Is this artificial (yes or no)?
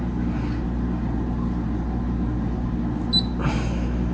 no